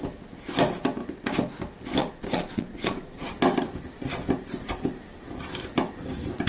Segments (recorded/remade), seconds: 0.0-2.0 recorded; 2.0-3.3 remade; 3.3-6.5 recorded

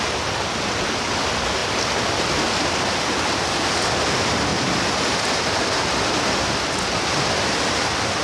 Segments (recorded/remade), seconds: 0.0-8.2 recorded

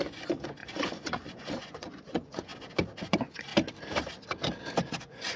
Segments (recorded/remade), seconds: 0.0-2.5 remade; 2.5-3.1 recorded; 3.1-3.5 remade; 3.5-4.9 recorded; 4.9-5.4 remade

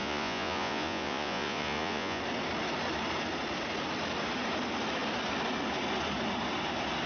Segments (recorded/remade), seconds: 0.0-2.2 remade; 2.2-7.1 recorded

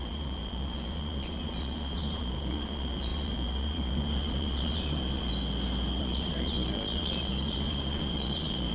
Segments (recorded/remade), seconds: 0.0-5.3 remade; 5.3-6.0 recorded; 6.0-8.7 remade

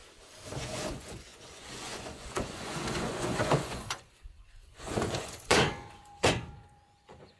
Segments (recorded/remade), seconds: 0.0-0.6 recorded; 0.6-7.4 remade

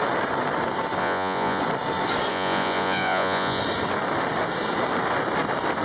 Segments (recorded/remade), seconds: 0.0-1.0 recorded; 1.0-1.6 remade; 1.6-2.3 recorded; 2.3-3.6 remade; 3.6-5.8 recorded